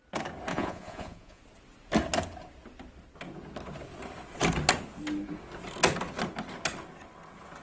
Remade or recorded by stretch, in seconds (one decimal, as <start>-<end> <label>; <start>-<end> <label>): 0.0-0.5 recorded; 0.5-1.4 remade; 1.4-7.6 recorded